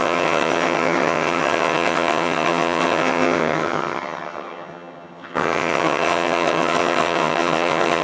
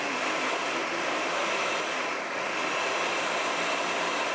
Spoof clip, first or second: first